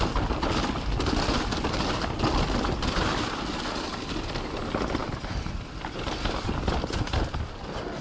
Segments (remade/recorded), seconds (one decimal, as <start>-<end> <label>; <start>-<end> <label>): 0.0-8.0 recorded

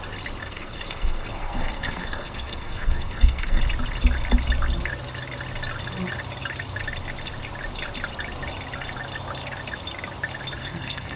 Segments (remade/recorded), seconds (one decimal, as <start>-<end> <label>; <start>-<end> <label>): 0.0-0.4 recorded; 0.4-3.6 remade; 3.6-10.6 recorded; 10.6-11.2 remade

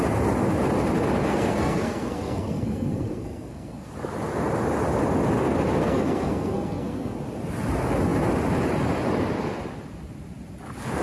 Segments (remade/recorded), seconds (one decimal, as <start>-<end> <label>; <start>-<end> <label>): 0.0-1.3 recorded; 1.3-3.9 remade; 3.9-5.8 recorded; 5.8-7.2 remade; 7.2-11.0 recorded

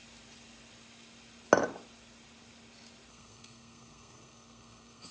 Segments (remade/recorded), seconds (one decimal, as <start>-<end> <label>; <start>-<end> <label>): 0.0-3.1 recorded; 3.1-5.1 remade

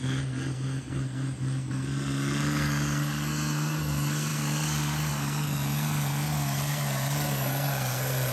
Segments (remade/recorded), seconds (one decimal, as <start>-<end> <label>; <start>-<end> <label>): 0.0-8.3 remade

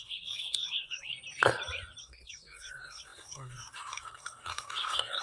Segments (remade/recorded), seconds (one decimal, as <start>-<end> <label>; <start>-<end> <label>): 0.0-1.1 remade; 1.1-2.0 recorded; 2.0-5.2 remade

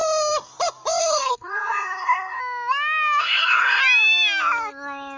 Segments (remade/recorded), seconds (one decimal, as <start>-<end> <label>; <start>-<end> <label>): 0.0-1.0 recorded; 1.0-2.4 remade; 2.4-3.2 recorded; 3.2-3.8 remade; 3.8-5.2 recorded